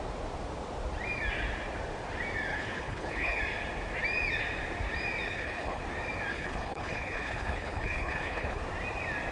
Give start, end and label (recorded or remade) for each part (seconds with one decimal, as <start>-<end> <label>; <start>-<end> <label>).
0.0-2.5 recorded; 2.5-3.4 remade; 3.4-5.3 recorded; 5.3-5.8 remade; 5.8-6.3 recorded; 6.3-8.6 remade; 8.6-9.3 recorded